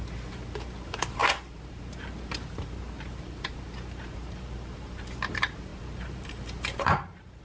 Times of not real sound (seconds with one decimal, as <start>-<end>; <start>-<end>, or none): 0.0-7.4